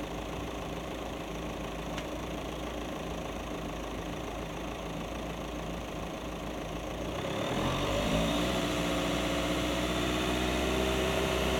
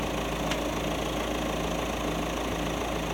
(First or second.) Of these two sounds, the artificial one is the first